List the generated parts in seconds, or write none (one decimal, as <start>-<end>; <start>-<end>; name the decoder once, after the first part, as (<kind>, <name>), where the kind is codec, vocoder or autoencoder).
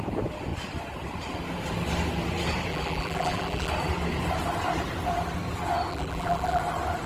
2.7-3.7 (vocoder, BigVGAN v2); 5.9-6.6